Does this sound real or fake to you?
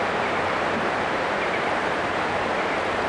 fake